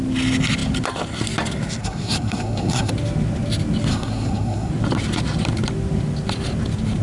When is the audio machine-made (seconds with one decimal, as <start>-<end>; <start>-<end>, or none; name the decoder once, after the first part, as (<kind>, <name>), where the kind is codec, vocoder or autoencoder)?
1.8-2.9 (codec, SNAC); 3.9-4.7